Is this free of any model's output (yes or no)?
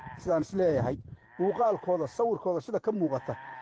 no